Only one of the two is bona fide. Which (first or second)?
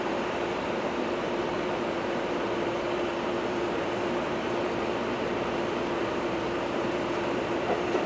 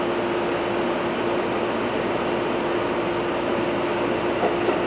second